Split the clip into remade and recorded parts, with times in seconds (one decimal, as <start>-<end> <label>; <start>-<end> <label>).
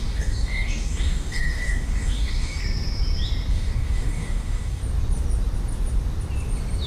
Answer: 0.0-2.6 remade; 2.6-3.5 recorded; 3.5-4.8 remade; 4.8-6.9 recorded